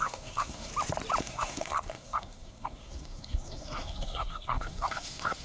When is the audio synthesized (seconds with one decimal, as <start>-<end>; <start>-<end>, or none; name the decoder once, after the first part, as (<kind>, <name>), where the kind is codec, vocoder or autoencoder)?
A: 0.0-0.7 (codec, SNAC); 1.2-5.4